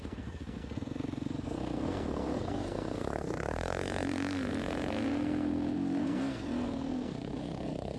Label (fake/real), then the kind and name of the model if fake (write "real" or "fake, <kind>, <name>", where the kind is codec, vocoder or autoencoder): fake, codec, SNAC